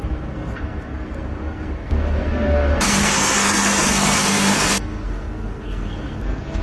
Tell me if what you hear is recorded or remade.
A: remade